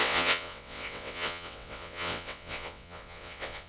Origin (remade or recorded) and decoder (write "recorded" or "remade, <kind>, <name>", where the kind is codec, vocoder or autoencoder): remade, vocoder, WaveNeXt